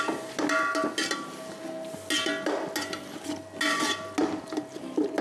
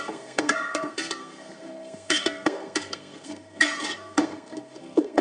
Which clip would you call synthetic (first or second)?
second